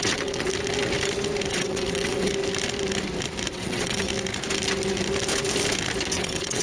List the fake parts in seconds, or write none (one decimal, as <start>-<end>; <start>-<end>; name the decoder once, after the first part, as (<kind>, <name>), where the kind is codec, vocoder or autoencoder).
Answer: 0.0-0.5 (vocoder, WaveNeXt); 1.5-2.3; 3.5-4.1; 6.1-6.6